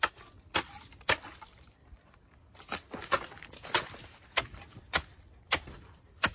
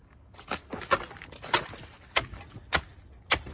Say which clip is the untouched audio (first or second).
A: second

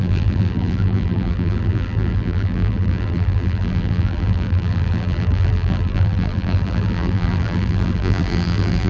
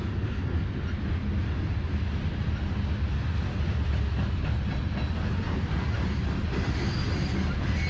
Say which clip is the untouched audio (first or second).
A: second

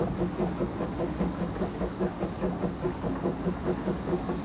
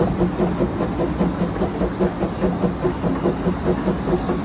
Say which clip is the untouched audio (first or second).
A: second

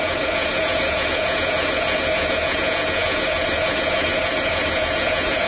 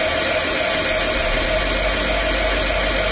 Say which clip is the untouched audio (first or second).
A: second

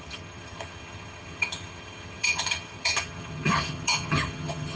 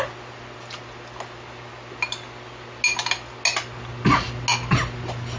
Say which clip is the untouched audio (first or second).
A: second